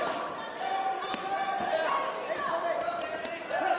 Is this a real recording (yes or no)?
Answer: yes